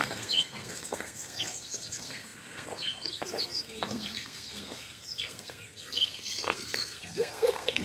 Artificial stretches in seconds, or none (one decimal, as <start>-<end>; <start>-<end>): 0.0-7.8